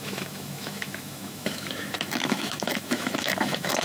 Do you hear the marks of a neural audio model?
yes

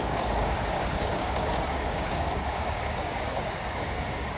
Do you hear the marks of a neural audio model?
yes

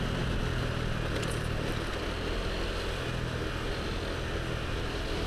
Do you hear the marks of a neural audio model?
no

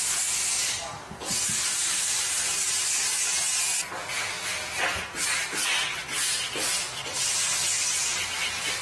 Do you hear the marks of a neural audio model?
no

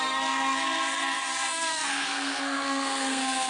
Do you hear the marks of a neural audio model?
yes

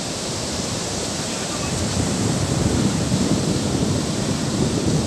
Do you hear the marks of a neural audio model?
yes